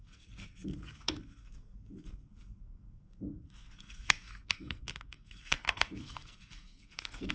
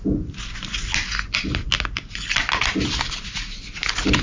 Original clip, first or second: second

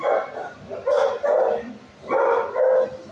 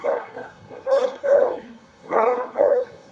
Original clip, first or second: first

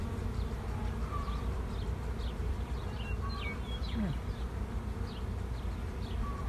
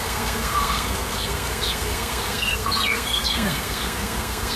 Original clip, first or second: first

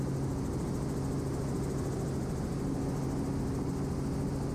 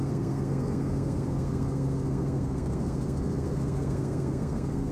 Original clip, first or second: first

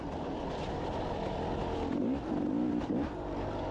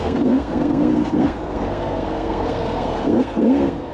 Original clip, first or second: first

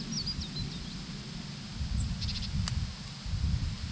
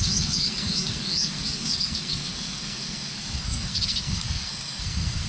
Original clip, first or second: first